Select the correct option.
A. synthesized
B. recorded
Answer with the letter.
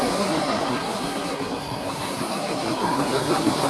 A